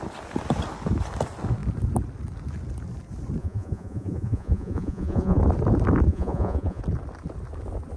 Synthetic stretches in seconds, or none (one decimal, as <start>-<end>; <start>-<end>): 3.4-5.4; 6.1-6.8